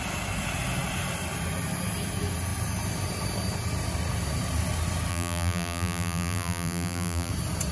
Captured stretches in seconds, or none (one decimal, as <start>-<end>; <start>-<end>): 0.0-5.1; 7.3-7.7